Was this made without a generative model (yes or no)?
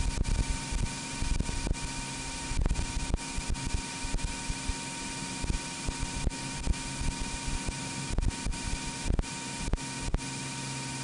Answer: yes